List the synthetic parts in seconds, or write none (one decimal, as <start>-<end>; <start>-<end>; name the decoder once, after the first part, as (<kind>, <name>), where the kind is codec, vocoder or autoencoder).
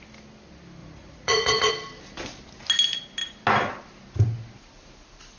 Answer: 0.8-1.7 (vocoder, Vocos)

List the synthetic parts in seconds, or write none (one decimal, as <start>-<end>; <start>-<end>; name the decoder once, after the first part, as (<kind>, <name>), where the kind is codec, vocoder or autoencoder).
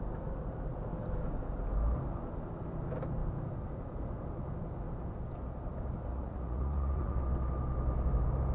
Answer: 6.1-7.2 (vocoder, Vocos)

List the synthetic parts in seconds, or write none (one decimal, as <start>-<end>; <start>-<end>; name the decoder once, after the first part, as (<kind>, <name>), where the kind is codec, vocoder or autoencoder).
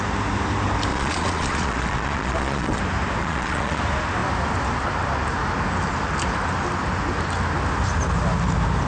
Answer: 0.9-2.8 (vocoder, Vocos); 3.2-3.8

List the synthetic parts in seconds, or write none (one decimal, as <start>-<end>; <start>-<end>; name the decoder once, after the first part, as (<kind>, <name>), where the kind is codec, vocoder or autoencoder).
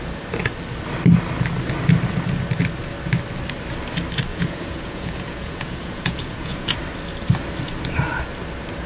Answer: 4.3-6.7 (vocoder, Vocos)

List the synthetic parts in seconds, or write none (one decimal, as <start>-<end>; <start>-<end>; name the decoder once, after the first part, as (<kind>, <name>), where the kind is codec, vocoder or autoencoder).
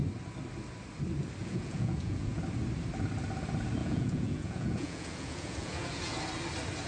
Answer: 1.4-2.4 (vocoder, Vocos); 3.8-6.2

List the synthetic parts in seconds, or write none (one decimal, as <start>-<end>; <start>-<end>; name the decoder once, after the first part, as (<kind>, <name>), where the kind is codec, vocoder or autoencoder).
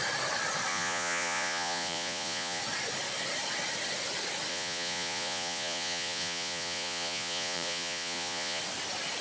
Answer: 0.7-2.6 (vocoder, Vocos); 4.5-8.6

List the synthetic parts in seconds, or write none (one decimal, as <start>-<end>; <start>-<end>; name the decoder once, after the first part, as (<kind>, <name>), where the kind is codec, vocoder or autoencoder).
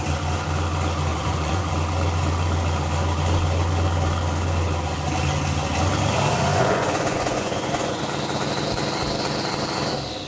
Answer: 1.1-1.7 (vocoder, Vocos); 6.5-8.0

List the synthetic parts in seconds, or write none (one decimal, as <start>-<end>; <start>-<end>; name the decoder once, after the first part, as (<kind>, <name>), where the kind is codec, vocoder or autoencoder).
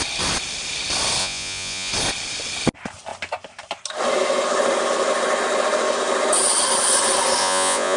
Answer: 1.2-1.9 (vocoder, Vocos); 7.4-8.0